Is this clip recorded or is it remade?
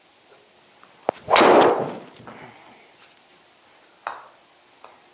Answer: recorded